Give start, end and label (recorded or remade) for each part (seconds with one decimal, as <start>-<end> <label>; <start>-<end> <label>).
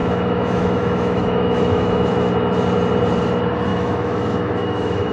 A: 0.0-2.3 remade; 2.3-3.7 recorded; 3.7-5.1 remade